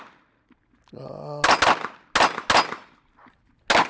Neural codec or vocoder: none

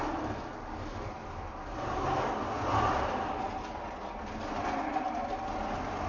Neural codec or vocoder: none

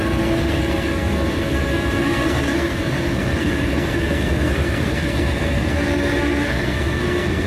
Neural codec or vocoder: codec, SNAC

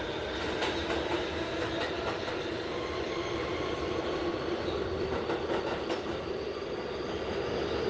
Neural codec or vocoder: none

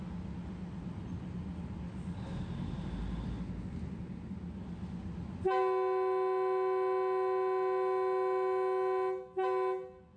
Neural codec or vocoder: none